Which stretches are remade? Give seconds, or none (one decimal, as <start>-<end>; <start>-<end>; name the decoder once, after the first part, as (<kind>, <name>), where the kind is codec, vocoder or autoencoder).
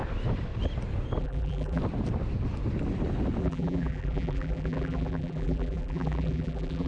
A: 1.2-1.8 (vocoder, BigVGAN v2); 3.4-6.9